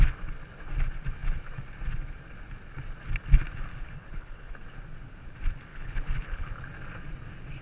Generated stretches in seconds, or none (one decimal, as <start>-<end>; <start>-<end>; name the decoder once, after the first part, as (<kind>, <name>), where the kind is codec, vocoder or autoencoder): 3.7-4.5 (codec, HILCodec); 5.7-6.5